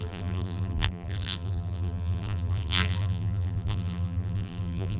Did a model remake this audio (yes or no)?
yes